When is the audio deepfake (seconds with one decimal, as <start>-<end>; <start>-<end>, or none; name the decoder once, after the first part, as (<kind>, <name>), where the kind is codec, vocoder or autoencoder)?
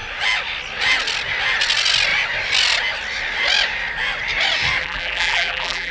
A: 4.8-5.9 (vocoder, BigVGAN v2)